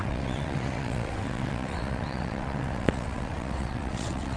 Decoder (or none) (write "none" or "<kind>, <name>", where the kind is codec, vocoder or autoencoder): vocoder, WaveNeXt